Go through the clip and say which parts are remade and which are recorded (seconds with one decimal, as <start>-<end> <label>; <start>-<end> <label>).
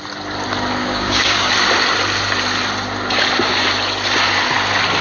0.0-0.8 recorded; 0.8-1.5 remade; 1.5-5.0 recorded